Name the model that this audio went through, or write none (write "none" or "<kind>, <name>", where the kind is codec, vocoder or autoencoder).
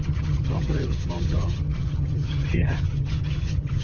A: vocoder, HiFi-GAN